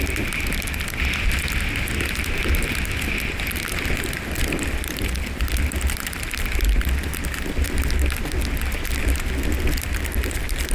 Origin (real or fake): real